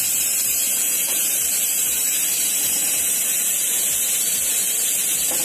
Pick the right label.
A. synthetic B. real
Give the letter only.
A